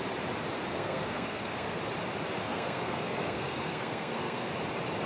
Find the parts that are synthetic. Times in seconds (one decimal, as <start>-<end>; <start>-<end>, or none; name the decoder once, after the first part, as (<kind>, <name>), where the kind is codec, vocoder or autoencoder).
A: 0.7-1.8 (codec, SNAC); 2.4-4.5